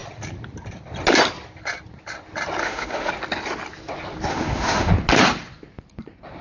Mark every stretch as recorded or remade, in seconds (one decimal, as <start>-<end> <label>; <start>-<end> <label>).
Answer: 0.0-2.6 recorded; 2.6-3.1 remade; 3.1-4.3 recorded; 4.3-4.9 remade; 4.9-6.4 recorded